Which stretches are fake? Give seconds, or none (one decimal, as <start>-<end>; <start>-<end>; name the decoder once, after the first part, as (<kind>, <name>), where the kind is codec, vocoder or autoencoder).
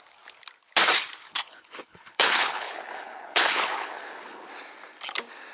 1.2-4.5 (codec, HILCodec)